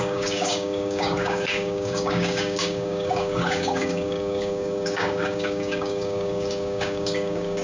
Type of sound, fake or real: fake